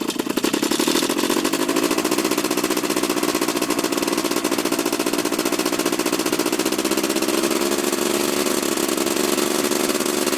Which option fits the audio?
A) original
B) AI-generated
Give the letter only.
A